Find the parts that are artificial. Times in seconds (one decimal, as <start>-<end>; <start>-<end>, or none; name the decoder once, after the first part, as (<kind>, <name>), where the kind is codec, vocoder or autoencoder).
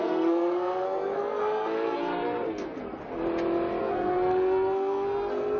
0.0-3.0 (codec, SNAC); 3.8-5.6